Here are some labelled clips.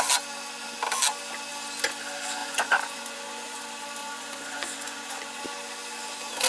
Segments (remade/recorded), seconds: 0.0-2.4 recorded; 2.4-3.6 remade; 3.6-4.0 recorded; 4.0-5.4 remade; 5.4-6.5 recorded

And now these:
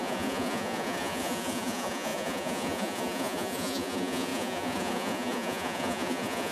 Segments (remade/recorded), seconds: 0.0-6.5 remade